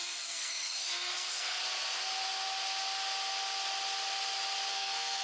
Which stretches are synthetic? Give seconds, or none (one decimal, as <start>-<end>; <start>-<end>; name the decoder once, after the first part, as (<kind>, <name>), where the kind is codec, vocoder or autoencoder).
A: 0.0-1.6 (codec, SNAC); 4.7-5.2